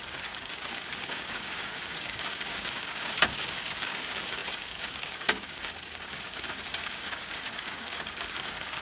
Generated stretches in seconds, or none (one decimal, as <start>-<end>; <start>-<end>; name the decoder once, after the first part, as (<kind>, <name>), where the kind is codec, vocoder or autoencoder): 0.0-8.8 (codec, DAC)